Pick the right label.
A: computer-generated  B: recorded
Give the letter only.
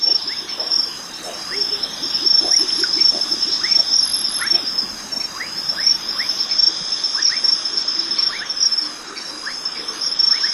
B